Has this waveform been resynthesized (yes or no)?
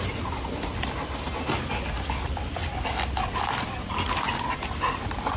no